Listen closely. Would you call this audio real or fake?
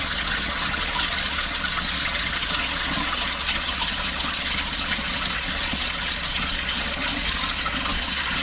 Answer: fake